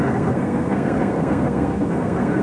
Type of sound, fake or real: fake